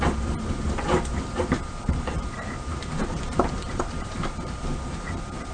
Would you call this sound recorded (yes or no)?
no